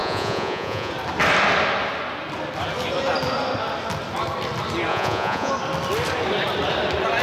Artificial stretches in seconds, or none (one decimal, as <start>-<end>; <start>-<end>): 0.0-0.9; 4.9-5.5